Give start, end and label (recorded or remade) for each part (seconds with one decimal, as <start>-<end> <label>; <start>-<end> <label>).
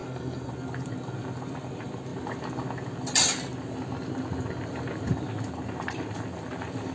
0.0-0.5 remade; 0.5-6.9 recorded